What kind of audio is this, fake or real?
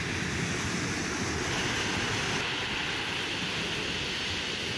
real